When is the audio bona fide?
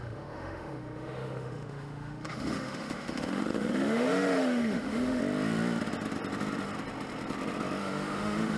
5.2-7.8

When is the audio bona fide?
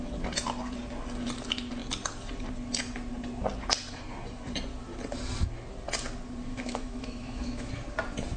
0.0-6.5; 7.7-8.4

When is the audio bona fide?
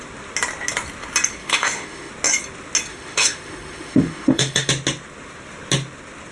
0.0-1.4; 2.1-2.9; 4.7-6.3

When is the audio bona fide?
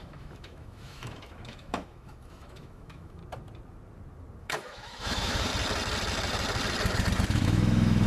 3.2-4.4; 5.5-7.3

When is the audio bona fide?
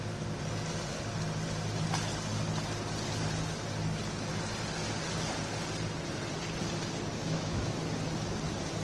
0.0-7.1; 7.8-8.8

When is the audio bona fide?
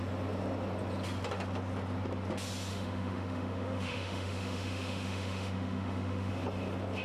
0.0-2.7; 6.3-7.0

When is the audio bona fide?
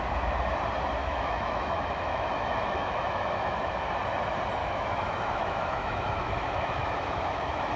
0.0-1.0; 3.7-4.6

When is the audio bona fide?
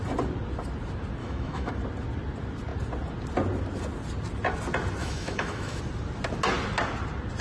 0.0-1.2; 1.7-5.0; 5.8-7.4